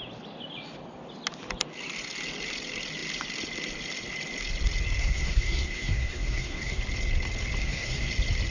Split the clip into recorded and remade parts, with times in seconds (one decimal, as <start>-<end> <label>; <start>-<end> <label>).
0.0-5.0 recorded; 5.0-6.8 remade; 6.8-7.6 recorded; 7.6-8.1 remade; 8.1-8.5 recorded